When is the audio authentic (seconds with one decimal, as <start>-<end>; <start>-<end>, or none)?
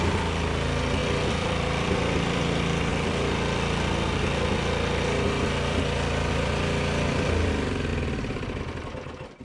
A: 0.0-1.0; 2.4-2.9; 7.5-7.9; 8.6-9.4